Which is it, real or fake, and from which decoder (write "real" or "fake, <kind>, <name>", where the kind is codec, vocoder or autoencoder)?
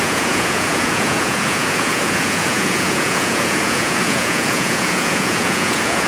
fake, vocoder, Vocos